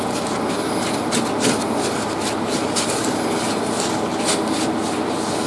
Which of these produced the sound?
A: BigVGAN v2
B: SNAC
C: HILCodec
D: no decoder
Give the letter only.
D